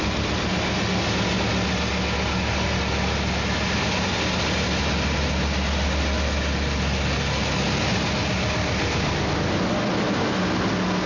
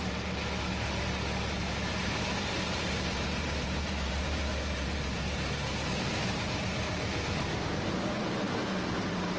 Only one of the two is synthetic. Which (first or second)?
second